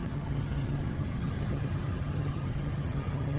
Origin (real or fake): fake